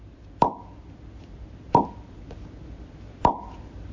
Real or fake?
real